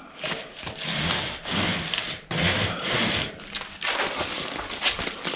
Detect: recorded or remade recorded